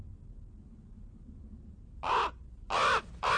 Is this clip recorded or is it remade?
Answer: recorded